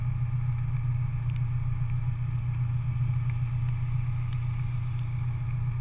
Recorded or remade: recorded